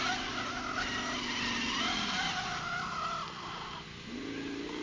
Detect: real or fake real